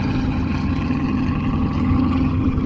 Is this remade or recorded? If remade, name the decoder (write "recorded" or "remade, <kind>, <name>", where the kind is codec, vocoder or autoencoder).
remade, vocoder, HiFi-GAN